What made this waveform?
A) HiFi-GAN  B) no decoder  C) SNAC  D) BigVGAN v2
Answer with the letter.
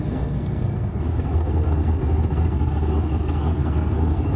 C